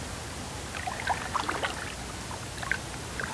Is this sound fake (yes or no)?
no